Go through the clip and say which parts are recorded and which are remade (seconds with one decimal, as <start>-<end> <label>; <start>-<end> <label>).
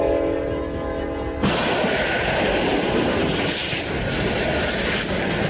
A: 0.0-5.5 recorded